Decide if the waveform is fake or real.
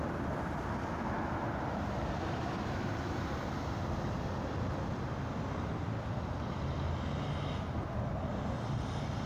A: real